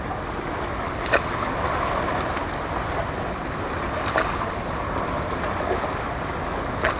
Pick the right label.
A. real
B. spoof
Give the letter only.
A